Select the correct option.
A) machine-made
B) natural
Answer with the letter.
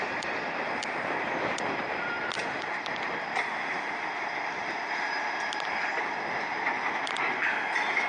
B